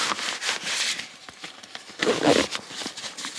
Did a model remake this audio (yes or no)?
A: no